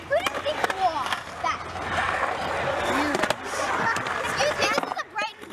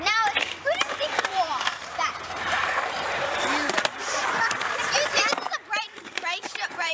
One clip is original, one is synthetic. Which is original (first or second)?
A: first